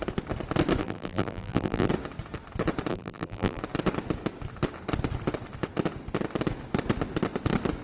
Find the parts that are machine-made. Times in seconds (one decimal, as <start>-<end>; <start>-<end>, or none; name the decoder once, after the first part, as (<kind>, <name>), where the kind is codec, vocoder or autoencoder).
0.8-1.9 (vocoder, BigVGAN v2); 2.9-3.6